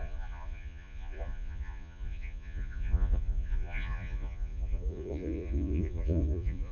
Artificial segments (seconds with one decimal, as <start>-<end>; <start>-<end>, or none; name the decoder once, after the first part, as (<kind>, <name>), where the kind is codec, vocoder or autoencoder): 0.0-6.7 (vocoder, Vocos)